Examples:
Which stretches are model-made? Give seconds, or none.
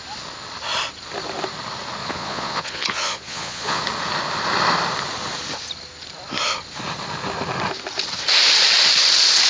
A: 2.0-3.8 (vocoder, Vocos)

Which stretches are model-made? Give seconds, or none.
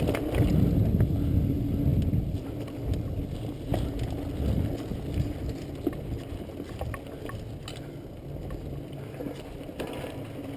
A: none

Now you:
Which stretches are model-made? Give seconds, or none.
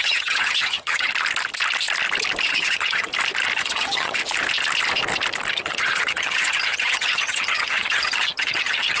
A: 0.0-1.1 (vocoder, HiFi-GAN); 2.5-3.1; 3.6-4.2; 5.5-9.0